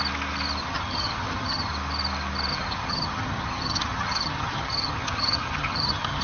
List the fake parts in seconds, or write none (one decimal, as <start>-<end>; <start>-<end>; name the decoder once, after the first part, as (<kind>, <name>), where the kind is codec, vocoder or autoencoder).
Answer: 0.6-1.7 (vocoder, HiFi-GAN); 2.5-6.2